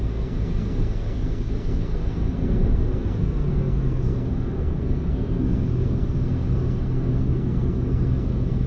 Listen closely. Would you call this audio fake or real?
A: fake